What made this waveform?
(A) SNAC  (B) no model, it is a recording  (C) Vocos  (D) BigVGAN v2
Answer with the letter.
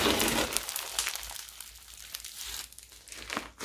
B